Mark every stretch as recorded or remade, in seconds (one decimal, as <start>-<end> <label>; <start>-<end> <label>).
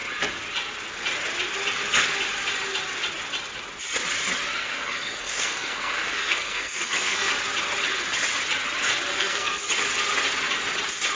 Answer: 0.0-4.6 recorded; 4.6-7.3 remade; 7.3-9.1 recorded; 9.1-9.7 remade; 9.7-11.1 recorded